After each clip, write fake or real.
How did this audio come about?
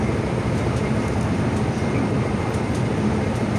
real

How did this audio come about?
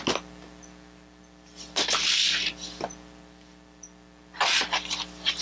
real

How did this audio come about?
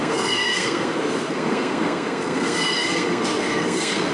fake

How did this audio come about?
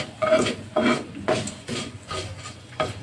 fake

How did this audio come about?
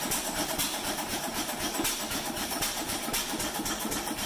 fake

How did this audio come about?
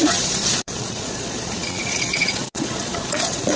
fake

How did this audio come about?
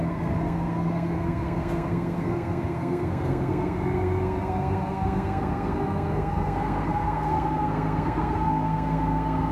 fake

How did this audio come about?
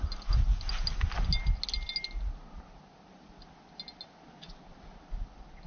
real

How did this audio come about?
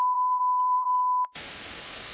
fake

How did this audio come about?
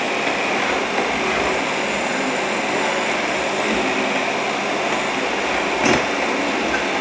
real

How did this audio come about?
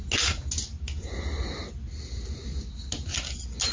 real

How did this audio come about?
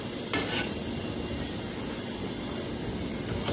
real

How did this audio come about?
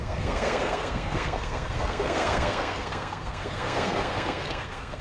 fake